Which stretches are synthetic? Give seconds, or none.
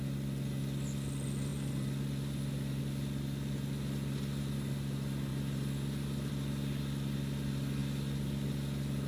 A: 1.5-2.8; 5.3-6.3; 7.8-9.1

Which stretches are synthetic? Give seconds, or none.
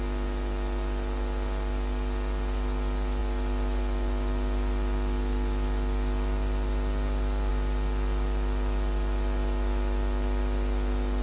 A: none